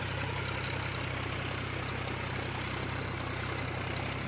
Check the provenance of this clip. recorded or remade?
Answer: recorded